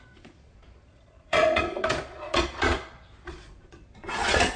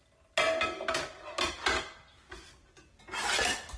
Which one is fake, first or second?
first